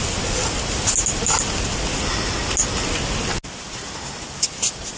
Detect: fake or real real